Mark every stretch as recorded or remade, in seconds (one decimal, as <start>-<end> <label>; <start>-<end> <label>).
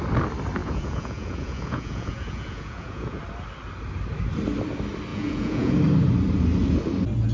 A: 0.0-0.6 recorded; 0.6-3.2 remade; 3.2-5.1 recorded; 5.1-5.7 remade; 5.7-7.3 recorded